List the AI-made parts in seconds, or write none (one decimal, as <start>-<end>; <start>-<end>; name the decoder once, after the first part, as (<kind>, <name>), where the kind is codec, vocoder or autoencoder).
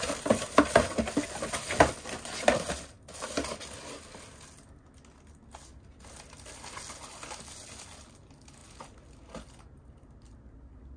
none